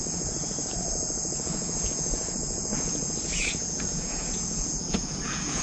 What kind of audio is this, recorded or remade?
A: remade